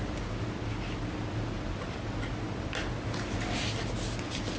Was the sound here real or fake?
real